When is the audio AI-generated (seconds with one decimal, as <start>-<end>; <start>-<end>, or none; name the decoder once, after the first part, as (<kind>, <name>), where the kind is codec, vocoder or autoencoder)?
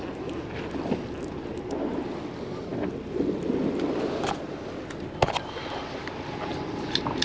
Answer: none